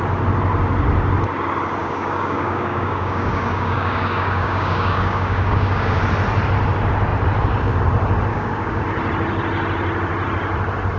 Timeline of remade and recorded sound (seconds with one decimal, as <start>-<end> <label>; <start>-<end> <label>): 0.0-1.8 recorded; 1.8-6.0 remade; 6.0-8.3 recorded; 8.3-8.8 remade; 8.8-11.0 recorded